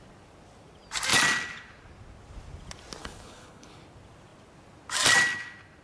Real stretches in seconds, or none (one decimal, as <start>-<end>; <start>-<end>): 0.0-3.0; 3.8-5.8